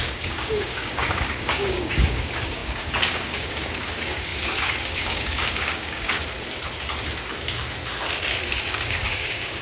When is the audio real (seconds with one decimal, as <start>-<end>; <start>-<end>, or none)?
6.2-8.6